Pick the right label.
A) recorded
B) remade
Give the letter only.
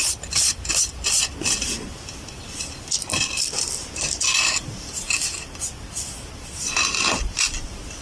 A